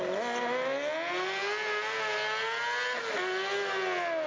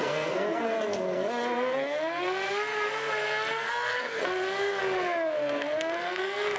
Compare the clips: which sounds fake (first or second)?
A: second